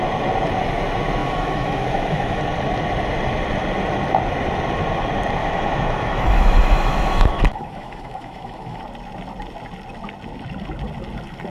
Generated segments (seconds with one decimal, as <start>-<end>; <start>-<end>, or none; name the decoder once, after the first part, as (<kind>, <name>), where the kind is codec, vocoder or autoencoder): 1.2-2.4 (autoencoder, DAC-VAE); 5.4-8.8